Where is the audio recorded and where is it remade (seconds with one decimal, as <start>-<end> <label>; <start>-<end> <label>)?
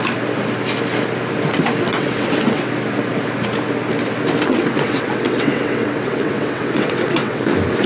0.0-1.9 recorded; 1.9-2.7 remade; 2.7-4.5 recorded; 4.5-7.4 remade; 7.4-7.9 recorded